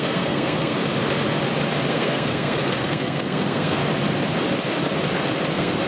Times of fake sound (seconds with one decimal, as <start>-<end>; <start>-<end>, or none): 0.0-0.8; 1.9-3.8; 5.5-5.9